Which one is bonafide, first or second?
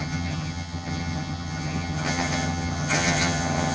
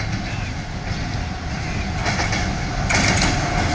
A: second